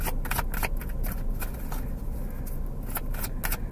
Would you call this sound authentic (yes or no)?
yes